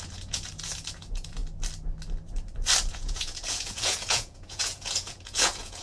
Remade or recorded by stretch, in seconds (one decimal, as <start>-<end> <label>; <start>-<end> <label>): 0.0-1.4 remade; 1.4-2.9 recorded; 2.9-5.8 remade